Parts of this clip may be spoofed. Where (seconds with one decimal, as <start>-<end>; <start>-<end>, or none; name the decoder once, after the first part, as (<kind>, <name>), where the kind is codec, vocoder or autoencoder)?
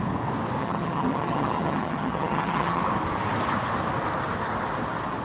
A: 0.6-2.8 (vocoder, HiFi-GAN)